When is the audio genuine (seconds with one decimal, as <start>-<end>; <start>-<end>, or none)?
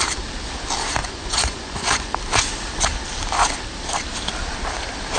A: 0.0-1.0; 2.1-5.2